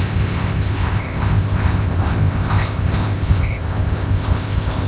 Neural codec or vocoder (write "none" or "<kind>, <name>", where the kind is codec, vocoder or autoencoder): codec, ZipCodec